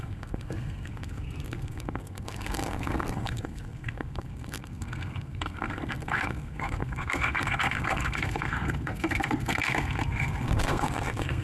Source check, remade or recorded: remade